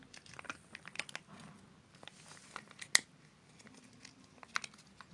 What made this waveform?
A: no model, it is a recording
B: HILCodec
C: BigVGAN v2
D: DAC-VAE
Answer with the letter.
A